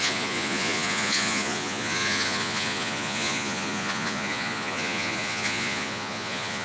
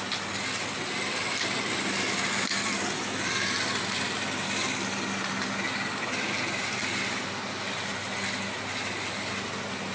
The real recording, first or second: second